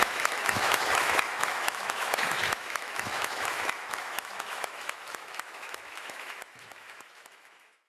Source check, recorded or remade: remade